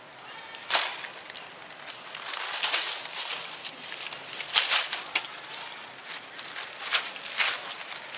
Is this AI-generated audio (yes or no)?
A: no